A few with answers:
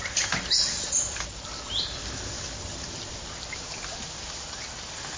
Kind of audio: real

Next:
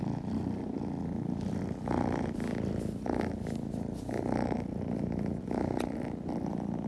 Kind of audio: real